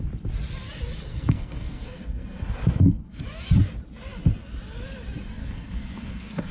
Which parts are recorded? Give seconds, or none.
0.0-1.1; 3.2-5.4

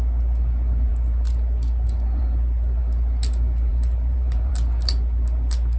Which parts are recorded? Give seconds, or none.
0.0-3.7; 4.5-5.8

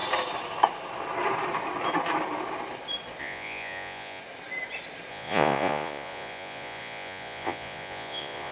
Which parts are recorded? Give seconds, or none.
0.0-3.2; 4.2-5.1

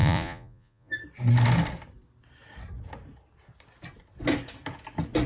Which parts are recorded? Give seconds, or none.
0.9-5.3

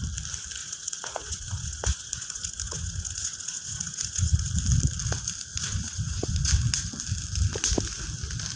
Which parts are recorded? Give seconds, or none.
0.0-0.6; 4.5-5.5; 6.5-8.6

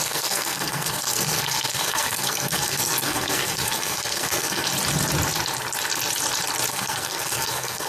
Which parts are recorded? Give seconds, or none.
4.7-6.7